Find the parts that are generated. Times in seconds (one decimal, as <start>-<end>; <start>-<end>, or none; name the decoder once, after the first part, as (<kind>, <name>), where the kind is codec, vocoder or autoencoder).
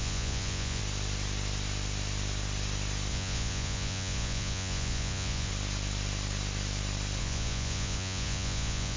0.0-0.8 (vocoder, Vocos); 3.1-5.5; 7.2-9.0